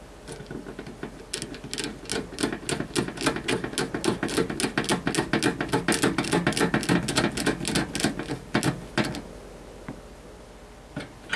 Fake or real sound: real